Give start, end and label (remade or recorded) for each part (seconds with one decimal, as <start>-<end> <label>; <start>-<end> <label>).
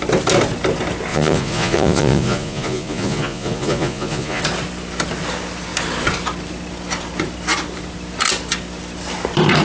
0.0-1.1 recorded; 1.1-4.4 remade; 4.4-9.6 recorded